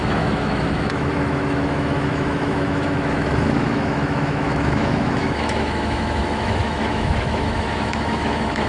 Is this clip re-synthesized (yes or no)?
yes